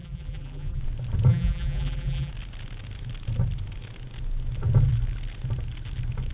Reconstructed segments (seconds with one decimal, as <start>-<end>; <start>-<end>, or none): 0.0-0.8; 1.3-2.3